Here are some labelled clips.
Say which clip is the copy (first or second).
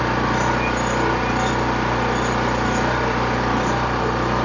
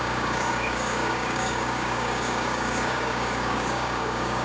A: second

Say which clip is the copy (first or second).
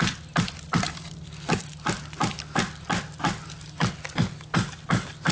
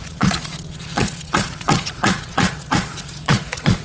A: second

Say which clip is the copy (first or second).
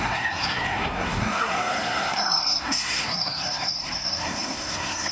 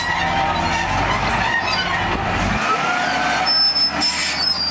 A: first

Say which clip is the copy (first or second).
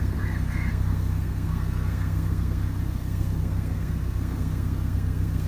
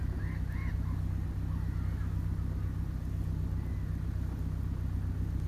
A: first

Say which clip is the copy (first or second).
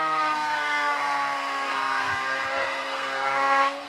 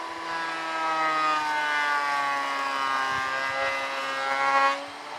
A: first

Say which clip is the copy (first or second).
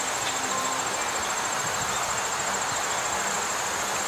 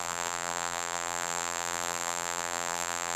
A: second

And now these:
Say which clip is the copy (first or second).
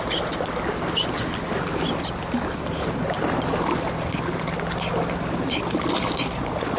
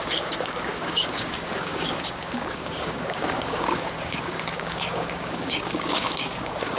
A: second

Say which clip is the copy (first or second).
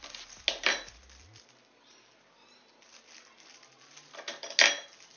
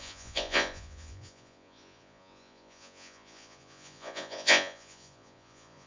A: second